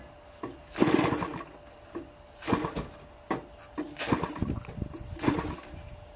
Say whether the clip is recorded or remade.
recorded